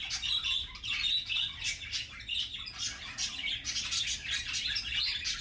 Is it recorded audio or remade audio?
recorded